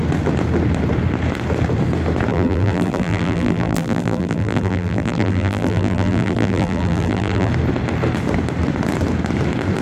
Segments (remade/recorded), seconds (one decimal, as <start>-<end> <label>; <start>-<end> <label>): 0.0-2.3 recorded; 2.3-7.5 remade; 7.5-9.8 recorded